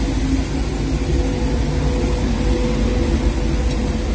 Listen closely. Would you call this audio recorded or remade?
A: recorded